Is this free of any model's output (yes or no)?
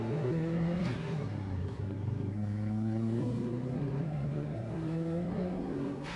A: no